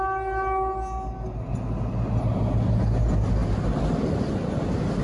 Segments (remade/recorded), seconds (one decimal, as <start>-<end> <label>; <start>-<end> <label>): 0.0-5.0 recorded